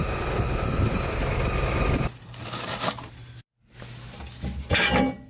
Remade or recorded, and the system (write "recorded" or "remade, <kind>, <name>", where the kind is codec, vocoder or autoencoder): recorded